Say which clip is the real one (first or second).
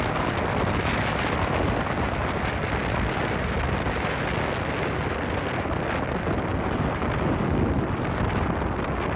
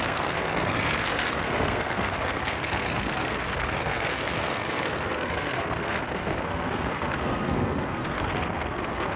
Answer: first